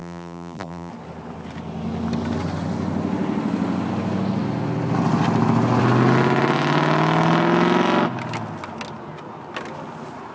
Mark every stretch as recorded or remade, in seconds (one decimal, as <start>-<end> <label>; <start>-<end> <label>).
0.0-0.9 remade; 0.9-10.3 recorded